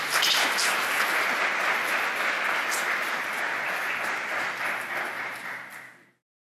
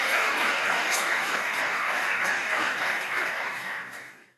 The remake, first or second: second